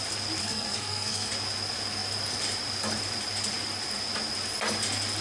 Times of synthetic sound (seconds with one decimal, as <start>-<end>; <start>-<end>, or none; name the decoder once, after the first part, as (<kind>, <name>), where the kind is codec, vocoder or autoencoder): 0.4-1.3 (codec, SNAC)